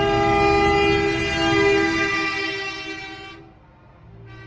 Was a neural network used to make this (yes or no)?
no